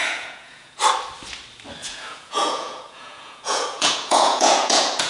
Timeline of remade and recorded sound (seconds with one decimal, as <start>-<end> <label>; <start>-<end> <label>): 0.0-0.8 remade; 0.8-1.8 recorded; 1.8-5.1 remade